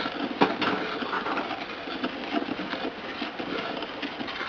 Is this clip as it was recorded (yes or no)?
yes